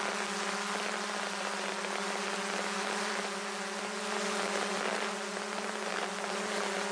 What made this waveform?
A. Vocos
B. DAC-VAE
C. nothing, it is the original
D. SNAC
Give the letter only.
C